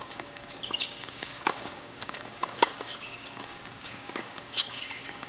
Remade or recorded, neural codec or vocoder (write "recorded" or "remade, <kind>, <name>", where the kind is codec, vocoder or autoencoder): remade, codec, DAC